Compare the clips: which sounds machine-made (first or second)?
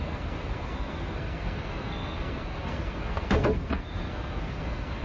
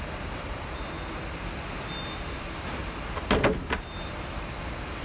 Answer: first